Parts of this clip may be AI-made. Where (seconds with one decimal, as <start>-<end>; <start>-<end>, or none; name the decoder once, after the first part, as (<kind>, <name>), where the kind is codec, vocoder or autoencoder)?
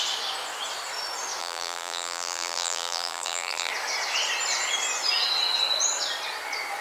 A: 1.4-3.7 (vocoder, BigVGAN v2)